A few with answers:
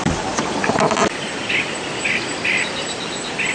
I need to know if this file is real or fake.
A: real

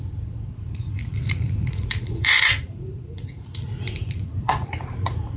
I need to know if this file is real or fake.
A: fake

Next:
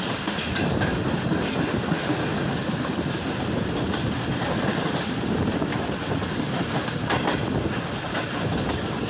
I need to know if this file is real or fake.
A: real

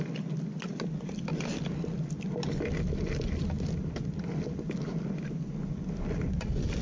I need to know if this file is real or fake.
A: real